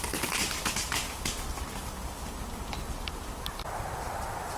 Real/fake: real